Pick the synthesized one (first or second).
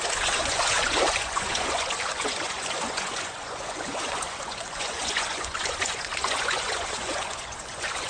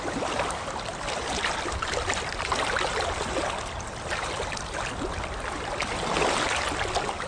first